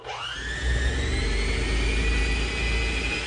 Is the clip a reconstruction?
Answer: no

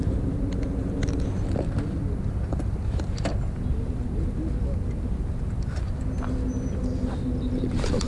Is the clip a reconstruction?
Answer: no